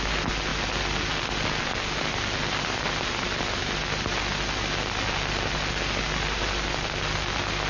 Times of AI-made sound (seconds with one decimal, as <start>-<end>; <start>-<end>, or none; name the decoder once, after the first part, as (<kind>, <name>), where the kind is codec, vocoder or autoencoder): none